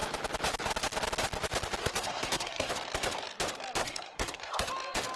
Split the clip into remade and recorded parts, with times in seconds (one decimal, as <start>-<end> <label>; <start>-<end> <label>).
0.0-1.8 recorded; 1.8-2.7 remade; 2.7-3.8 recorded; 3.8-4.7 remade; 4.7-5.2 recorded